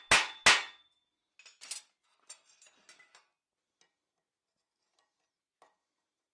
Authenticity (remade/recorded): recorded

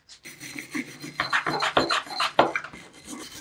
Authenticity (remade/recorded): recorded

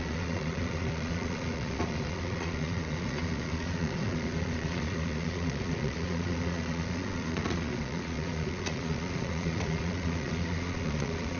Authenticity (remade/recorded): remade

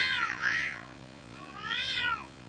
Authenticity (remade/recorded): remade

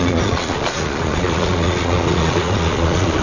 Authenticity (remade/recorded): remade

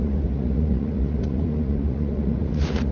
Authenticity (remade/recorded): remade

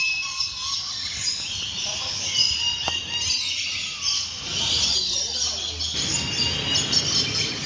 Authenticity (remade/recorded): recorded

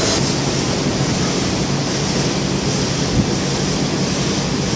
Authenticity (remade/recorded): recorded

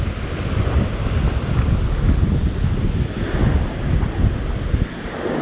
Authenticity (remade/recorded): recorded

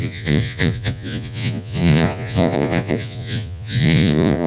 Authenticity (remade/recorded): remade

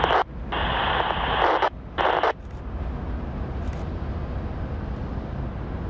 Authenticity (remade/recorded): recorded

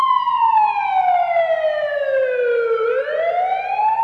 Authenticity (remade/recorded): recorded